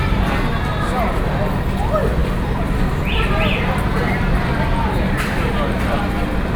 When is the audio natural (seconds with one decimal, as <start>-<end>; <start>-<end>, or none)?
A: 0.0-6.6